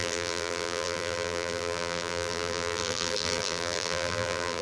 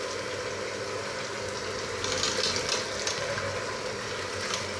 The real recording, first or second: second